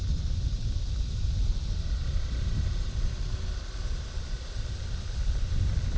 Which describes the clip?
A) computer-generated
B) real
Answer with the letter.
B